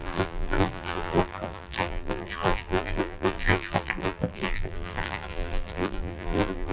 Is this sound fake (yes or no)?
yes